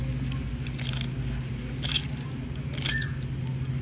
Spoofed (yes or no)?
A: no